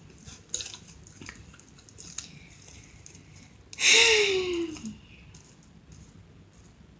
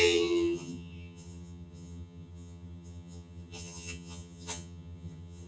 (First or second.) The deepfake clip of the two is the second